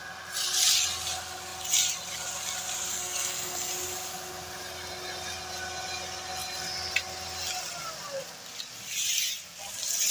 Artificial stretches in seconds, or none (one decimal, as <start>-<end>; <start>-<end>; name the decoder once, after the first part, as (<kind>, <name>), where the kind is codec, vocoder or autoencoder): 2.9-3.7 (codec, SNAC)